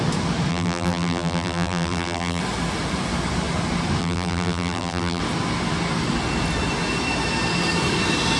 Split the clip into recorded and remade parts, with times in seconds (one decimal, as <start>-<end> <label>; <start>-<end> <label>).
0.0-0.5 recorded; 0.5-2.4 remade; 2.4-4.0 recorded; 4.0-5.2 remade; 5.2-8.4 recorded